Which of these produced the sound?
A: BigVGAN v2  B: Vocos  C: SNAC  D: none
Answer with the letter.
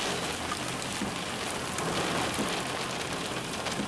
D